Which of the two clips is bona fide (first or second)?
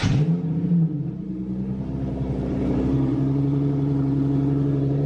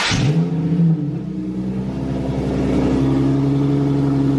second